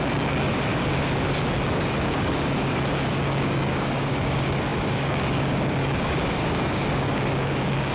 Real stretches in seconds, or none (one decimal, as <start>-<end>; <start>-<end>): none